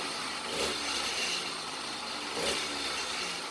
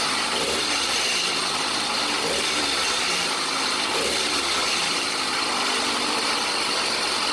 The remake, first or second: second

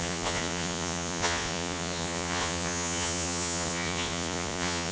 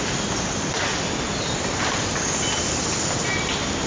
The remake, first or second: first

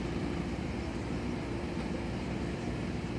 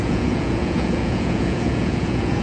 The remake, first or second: second